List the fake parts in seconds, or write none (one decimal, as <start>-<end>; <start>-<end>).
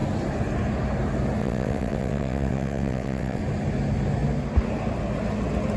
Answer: 1.4-3.4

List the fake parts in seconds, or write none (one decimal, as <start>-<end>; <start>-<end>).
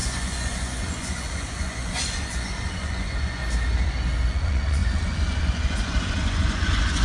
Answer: 0.0-3.4; 4.3-7.0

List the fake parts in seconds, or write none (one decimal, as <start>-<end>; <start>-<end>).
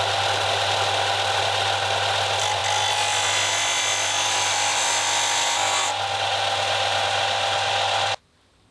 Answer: none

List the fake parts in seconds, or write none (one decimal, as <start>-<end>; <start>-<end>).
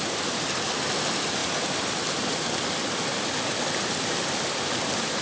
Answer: none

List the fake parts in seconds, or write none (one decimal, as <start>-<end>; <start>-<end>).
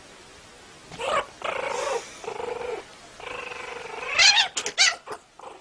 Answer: 3.5-4.3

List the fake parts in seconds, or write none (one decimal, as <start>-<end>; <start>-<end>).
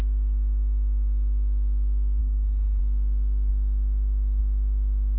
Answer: 2.2-2.8